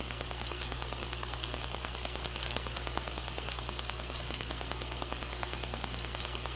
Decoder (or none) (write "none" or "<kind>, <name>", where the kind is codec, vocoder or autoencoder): codec, SNAC